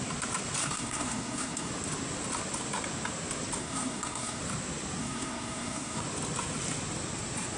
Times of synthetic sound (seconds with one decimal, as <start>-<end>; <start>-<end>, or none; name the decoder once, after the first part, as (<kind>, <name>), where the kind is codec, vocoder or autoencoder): 0.6-1.7 (codec, SNAC); 3.6-4.4; 5.0-6.0